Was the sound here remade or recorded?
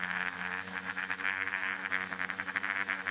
remade